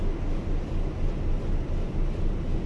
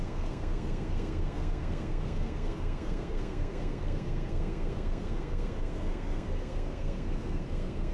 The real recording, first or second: first